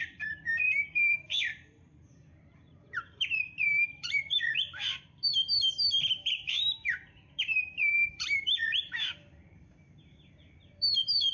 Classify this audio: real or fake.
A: fake